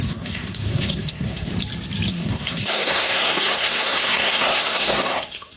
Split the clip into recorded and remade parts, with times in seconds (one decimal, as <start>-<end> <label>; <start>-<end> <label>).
0.0-1.5 remade; 1.5-2.1 recorded; 2.1-5.6 remade